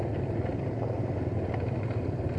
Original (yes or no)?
yes